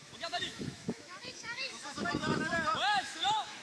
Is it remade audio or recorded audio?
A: remade